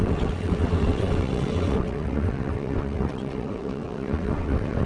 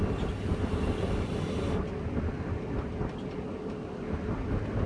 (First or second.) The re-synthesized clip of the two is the first